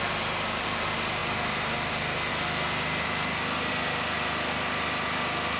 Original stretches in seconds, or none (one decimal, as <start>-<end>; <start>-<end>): 0.0-1.2; 1.9-5.6